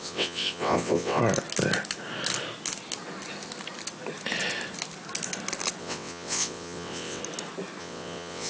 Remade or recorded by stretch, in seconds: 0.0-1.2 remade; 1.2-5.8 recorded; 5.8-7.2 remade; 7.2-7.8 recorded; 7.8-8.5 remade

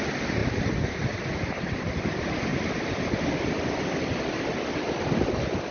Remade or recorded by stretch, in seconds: 0.0-0.4 recorded; 0.4-1.3 remade; 1.3-2.5 recorded; 2.5-4.5 remade; 4.5-5.7 recorded

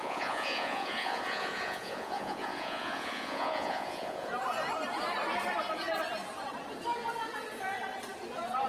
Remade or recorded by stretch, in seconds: 0.0-4.3 remade; 4.3-8.7 recorded

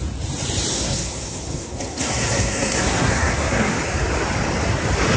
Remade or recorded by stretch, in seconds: 0.0-0.7 recorded; 0.7-3.8 remade; 3.8-5.2 recorded

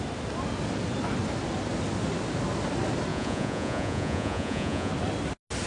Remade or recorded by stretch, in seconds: 0.0-3.1 recorded; 3.1-4.9 remade; 4.9-5.7 recorded

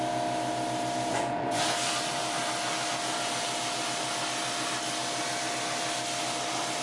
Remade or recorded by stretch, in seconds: 0.0-1.1 recorded; 1.1-1.6 remade; 1.6-6.8 recorded